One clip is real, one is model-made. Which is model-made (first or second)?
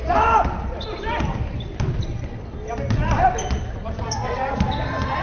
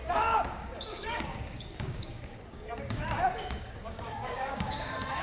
second